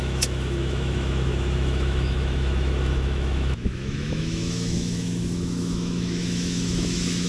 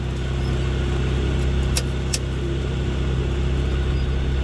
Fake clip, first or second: first